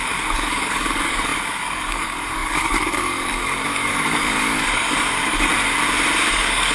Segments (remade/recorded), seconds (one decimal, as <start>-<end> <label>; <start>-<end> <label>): 0.0-5.5 remade; 5.5-6.3 recorded; 6.3-6.7 remade